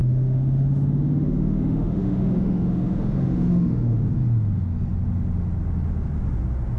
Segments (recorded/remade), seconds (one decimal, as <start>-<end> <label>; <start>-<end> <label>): 0.0-4.1 remade; 4.1-6.8 recorded